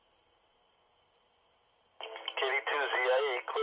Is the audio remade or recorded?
recorded